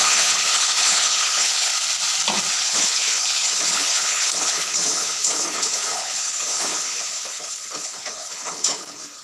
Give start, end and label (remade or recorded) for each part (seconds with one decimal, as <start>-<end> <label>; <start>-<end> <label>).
0.0-1.7 remade; 1.7-2.5 recorded; 2.5-9.2 remade